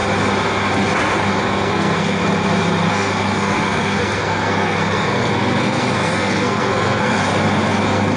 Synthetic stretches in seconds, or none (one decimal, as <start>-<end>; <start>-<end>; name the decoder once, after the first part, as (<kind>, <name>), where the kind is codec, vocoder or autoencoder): 1.3-2.2 (codec, SNAC); 2.9-7.2; 7.7-8.2